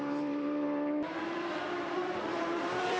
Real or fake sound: fake